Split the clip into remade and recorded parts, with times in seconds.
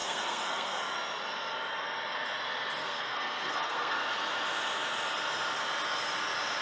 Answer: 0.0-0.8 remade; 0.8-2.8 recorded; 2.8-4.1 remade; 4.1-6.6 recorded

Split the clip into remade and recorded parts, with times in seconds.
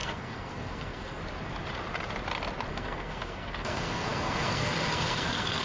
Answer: 0.0-1.2 remade; 1.2-2.7 recorded; 2.7-5.6 remade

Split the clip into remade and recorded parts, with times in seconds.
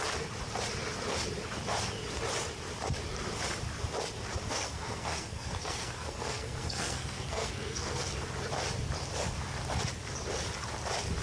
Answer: 0.0-4.4 recorded; 4.4-8.1 remade; 8.1-11.2 recorded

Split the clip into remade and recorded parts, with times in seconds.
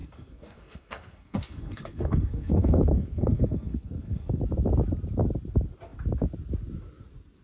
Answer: 0.0-4.4 remade; 4.4-7.4 recorded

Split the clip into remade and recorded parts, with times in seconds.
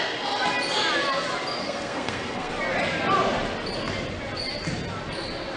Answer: 0.0-1.6 recorded; 1.6-2.5 remade; 2.5-5.6 recorded